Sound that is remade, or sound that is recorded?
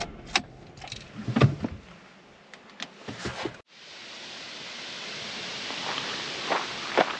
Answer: recorded